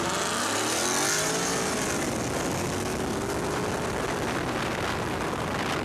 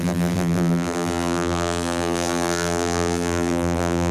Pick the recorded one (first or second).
first